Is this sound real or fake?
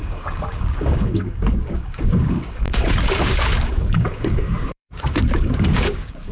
fake